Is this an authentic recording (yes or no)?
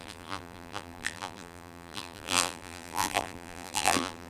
no